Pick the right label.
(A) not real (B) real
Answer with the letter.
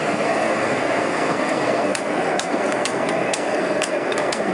A